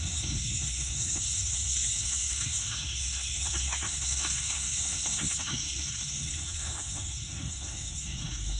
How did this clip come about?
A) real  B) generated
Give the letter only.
B